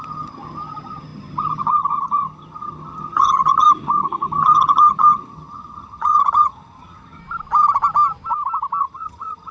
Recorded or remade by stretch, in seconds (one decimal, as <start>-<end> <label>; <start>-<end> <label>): 0.0-7.2 remade; 7.2-8.8 recorded; 8.8-9.5 remade